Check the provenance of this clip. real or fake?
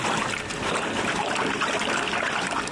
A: fake